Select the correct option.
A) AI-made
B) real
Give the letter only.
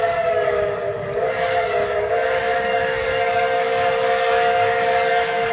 A